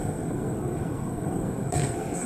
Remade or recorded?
remade